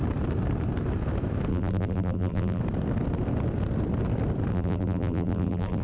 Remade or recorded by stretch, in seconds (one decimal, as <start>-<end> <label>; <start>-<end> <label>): 0.0-1.5 recorded; 1.5-2.6 remade; 2.6-4.5 recorded; 4.5-5.8 remade